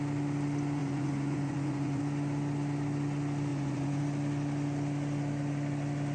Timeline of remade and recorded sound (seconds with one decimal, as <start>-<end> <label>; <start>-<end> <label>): 0.0-0.8 recorded; 0.8-2.0 remade; 2.0-3.5 recorded; 3.5-4.0 remade; 4.0-6.1 recorded